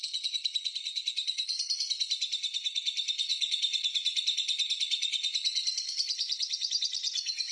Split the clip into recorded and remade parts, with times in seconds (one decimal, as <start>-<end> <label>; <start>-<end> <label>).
0.0-3.3 remade; 3.3-6.7 recorded; 6.7-7.5 remade